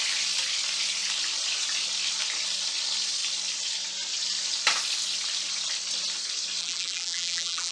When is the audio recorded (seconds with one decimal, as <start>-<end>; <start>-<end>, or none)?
0.0-6.6